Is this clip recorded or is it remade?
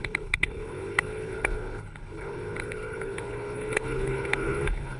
remade